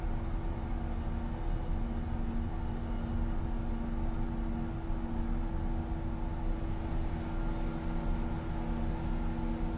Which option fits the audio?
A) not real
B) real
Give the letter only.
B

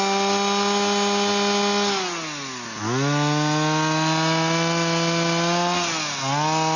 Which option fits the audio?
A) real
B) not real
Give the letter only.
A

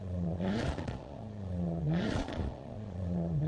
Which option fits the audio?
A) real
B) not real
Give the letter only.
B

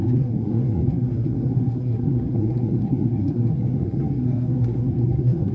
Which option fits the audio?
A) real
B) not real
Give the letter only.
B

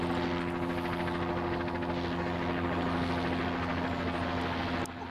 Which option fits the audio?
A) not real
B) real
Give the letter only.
B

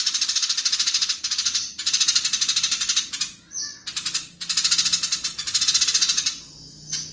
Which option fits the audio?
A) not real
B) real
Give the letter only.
B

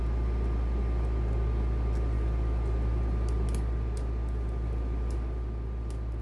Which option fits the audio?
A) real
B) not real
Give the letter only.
A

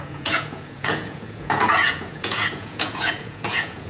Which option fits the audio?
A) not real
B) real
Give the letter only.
A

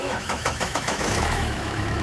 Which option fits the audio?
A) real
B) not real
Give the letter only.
B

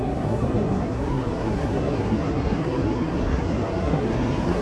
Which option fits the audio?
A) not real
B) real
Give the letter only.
A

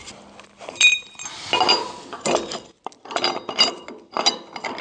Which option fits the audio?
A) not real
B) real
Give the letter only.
B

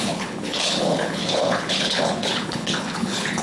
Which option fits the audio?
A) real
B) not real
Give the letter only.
B